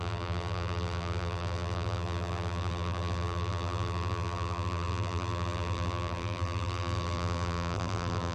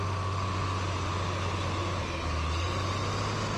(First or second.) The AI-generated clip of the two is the first